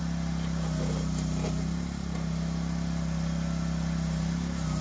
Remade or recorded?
recorded